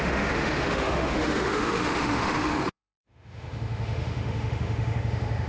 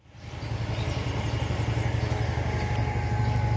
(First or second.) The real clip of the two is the second